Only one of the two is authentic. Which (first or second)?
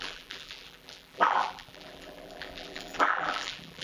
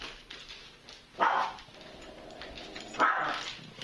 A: second